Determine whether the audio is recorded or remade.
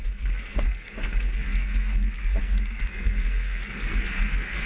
remade